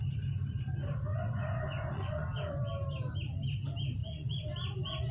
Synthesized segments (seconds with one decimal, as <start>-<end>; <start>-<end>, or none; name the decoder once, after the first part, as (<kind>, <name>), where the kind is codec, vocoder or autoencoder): 1.1-2.6 (vocoder, Vocos); 4.0-5.1

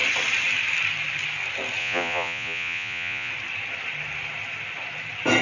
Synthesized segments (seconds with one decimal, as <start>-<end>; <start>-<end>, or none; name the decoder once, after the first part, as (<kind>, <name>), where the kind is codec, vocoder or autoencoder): 1.8-3.3 (vocoder, Vocos)

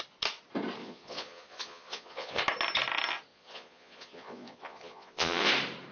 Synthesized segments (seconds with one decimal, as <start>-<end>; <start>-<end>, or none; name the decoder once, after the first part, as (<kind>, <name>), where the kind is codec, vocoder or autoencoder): 0.8-2.4 (vocoder, Vocos); 3.3-5.5

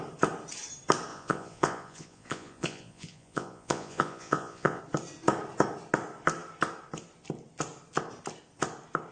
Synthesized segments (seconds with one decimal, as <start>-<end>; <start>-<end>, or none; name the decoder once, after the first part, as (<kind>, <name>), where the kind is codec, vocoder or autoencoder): 1.1-4.8 (vocoder, Vocos)

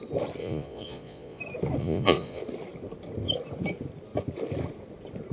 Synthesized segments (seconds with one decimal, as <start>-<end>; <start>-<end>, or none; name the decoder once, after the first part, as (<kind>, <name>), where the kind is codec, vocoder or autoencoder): 0.4-1.4 (vocoder, Vocos); 1.8-2.4